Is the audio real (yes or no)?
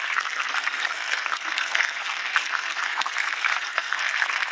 no